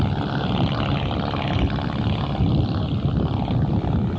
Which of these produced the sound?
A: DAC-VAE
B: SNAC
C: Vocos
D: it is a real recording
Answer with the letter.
D